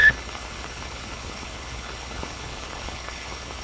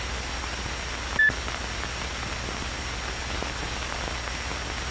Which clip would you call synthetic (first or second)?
first